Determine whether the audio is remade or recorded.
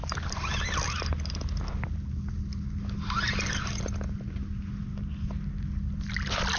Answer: recorded